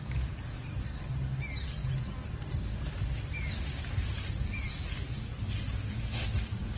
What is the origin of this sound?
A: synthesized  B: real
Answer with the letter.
B